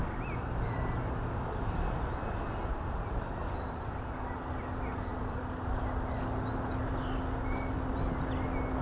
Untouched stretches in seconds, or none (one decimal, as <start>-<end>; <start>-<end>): 0.0-8.8